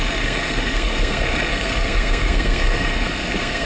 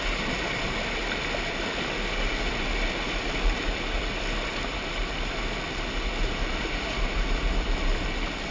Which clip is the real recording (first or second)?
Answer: second